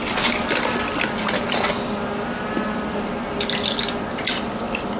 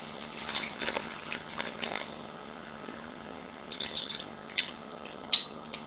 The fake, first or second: second